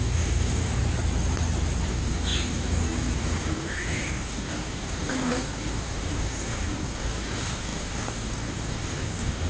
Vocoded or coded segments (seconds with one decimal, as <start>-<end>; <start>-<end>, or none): 0.0-0.8; 1.9-9.5